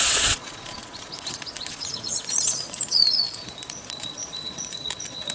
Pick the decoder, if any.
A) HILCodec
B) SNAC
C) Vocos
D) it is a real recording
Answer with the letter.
C